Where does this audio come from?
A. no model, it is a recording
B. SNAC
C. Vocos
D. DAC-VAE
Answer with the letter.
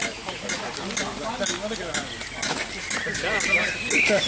A